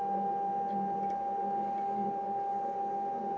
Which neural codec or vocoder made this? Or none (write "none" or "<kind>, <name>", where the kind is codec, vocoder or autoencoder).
none